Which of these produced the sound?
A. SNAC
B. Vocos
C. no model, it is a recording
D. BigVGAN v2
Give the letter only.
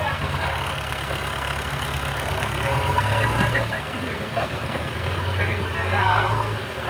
A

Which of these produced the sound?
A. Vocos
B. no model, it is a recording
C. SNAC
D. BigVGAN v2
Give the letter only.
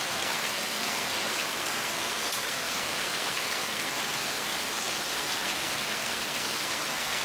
C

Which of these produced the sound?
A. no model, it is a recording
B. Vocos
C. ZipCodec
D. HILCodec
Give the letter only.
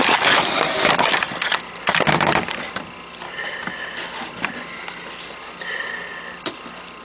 A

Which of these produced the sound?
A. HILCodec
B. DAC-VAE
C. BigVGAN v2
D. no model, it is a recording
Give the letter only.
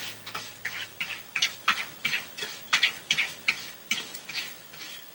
B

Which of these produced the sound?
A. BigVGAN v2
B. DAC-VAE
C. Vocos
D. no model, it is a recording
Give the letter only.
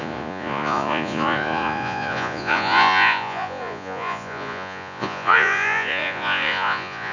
C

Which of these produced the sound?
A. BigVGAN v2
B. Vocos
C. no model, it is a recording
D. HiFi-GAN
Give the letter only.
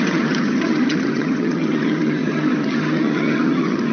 D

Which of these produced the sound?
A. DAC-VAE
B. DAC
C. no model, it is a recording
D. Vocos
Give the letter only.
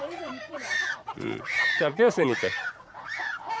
D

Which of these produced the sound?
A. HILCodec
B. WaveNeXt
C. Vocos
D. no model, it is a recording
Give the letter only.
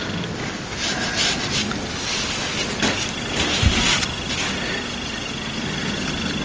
D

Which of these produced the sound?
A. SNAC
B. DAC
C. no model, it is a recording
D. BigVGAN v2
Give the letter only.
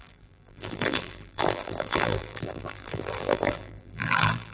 D